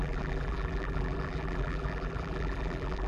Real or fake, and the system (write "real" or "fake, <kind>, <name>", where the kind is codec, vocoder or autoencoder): fake, vocoder, BigVGAN v2